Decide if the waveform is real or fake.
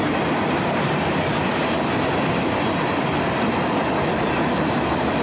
real